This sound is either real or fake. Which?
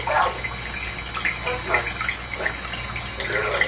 real